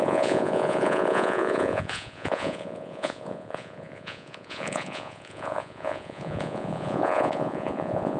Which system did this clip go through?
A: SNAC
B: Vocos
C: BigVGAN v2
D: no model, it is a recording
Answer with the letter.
B